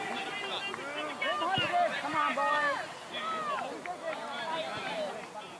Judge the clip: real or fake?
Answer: real